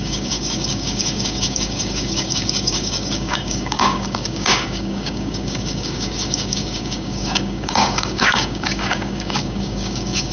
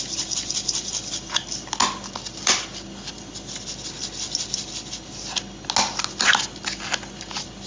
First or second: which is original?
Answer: second